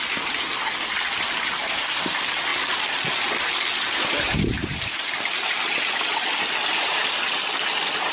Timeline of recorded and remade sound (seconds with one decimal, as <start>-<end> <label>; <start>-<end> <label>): 0.0-8.1 recorded